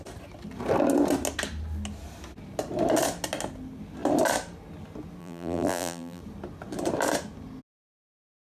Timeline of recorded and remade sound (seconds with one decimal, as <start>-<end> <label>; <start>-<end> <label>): 0.0-5.2 recorded; 5.2-6.2 remade; 6.2-8.5 recorded